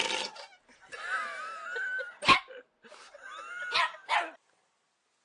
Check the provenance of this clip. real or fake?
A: real